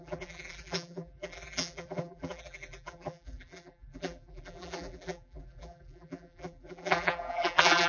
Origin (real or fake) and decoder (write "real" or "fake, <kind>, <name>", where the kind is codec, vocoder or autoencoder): fake, vocoder, BigVGAN v2